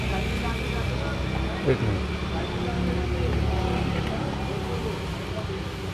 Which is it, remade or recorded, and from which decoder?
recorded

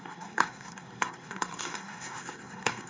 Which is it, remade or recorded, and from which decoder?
remade, codec, SNAC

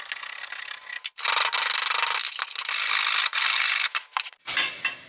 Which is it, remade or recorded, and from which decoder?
recorded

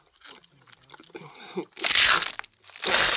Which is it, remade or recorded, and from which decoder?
recorded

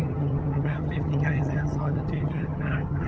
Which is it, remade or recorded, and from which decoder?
remade, vocoder, HiFi-GAN